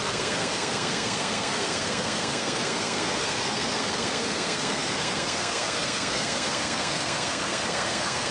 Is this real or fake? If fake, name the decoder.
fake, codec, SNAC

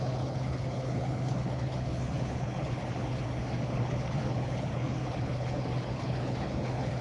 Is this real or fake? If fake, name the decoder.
fake, codec, HILCodec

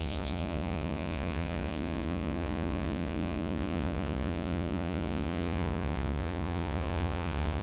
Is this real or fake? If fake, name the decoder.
fake, vocoder, Vocos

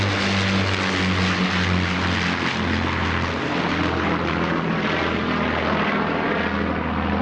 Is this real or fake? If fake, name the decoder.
real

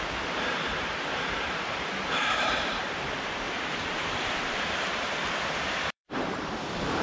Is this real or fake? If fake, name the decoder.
fake, vocoder, BigVGAN v2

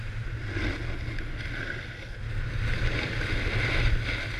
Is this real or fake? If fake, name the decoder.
real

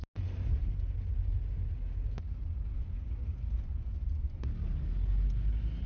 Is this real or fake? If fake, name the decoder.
real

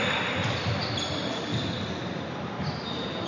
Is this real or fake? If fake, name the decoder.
real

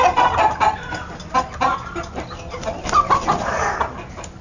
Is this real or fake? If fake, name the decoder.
real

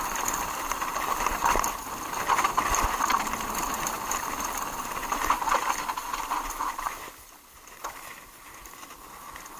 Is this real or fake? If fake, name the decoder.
real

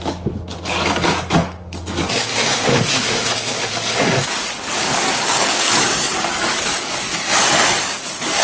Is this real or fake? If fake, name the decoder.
fake, codec, DAC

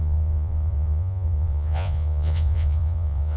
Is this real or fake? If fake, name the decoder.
fake, vocoder, Vocos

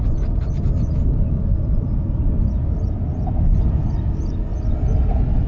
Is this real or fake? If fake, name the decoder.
real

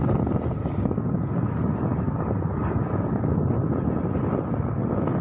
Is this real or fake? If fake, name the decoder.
real